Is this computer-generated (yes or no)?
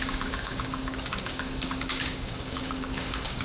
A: yes